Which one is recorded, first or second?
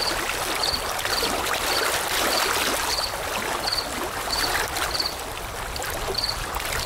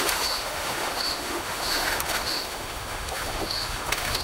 first